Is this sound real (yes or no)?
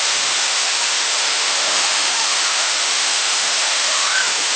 no